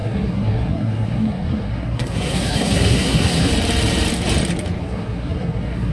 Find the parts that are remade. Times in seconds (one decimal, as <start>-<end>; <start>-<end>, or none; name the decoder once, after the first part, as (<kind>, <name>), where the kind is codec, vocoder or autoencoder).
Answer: 0.0-3.5 (codec, SNAC); 4.8-5.9